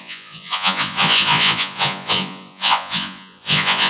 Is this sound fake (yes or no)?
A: yes